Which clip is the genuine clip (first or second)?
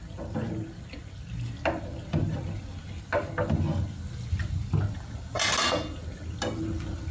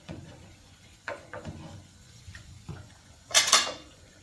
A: first